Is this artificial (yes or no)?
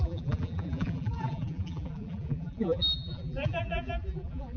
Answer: yes